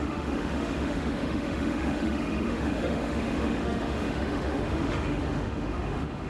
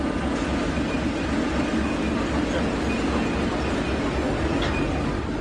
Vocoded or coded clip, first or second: first